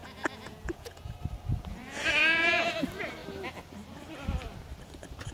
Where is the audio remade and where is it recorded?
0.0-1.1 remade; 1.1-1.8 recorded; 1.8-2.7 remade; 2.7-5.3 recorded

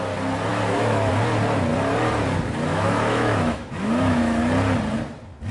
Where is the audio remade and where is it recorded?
0.0-0.5 recorded; 0.5-1.1 remade; 1.1-2.7 recorded; 2.7-4.4 remade; 4.4-5.5 recorded

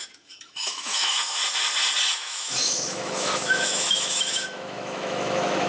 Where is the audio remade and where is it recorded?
0.0-1.4 remade; 1.4-2.1 recorded; 2.1-5.7 remade

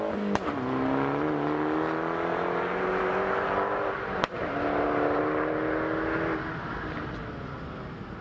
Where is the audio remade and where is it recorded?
0.0-2.3 recorded; 2.3-5.2 remade; 5.2-8.2 recorded

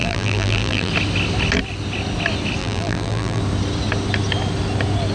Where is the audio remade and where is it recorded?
0.0-0.9 remade; 0.9-2.6 recorded; 2.6-3.4 remade; 3.4-5.1 recorded

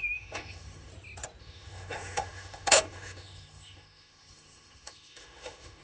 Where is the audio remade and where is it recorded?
0.0-0.9 remade; 0.9-1.4 recorded; 1.4-5.8 remade

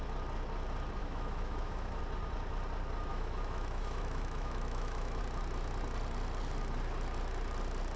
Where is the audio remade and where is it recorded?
0.0-1.0 recorded; 1.0-2.0 remade; 2.0-3.1 recorded; 3.1-5.2 remade; 5.2-8.0 recorded